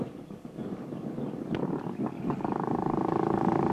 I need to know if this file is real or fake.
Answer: fake